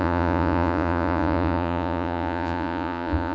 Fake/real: fake